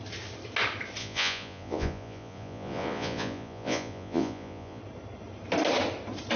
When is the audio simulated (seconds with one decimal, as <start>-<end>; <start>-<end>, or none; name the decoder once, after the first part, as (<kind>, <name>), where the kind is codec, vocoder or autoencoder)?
1.0-4.8 (vocoder, Vocos)